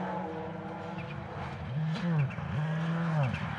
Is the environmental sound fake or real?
real